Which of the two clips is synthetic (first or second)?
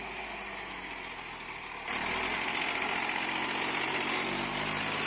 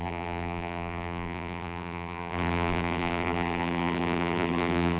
second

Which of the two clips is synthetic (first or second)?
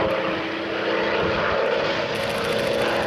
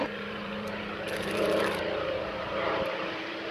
second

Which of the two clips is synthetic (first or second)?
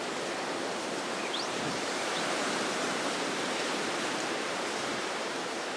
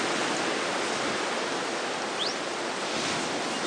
first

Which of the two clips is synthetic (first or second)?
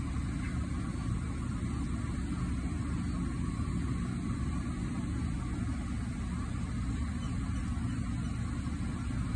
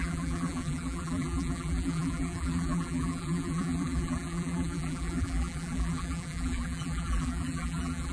second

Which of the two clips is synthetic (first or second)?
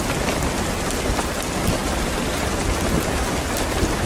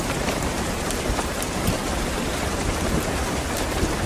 second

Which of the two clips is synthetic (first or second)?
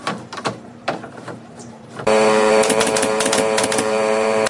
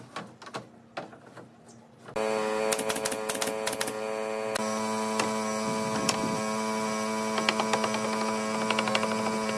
first